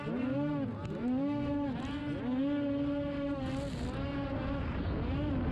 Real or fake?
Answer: real